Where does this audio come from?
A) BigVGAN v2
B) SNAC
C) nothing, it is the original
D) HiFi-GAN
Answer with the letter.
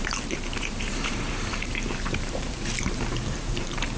A